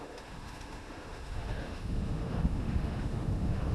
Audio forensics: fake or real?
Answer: fake